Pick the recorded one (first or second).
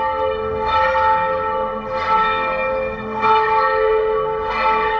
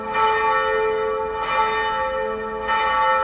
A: second